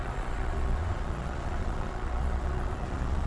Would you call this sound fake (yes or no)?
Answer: yes